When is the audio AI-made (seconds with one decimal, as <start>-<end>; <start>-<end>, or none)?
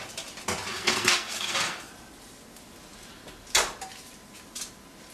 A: 0.7-1.9